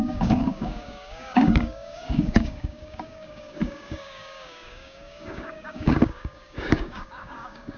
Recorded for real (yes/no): no